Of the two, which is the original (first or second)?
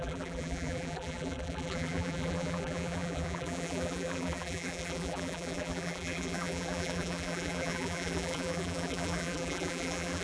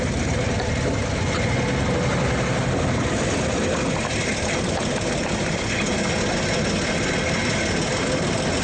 second